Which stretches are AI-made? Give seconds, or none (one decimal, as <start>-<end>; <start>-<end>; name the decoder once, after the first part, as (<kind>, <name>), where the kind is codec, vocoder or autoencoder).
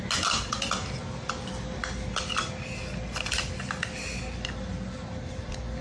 none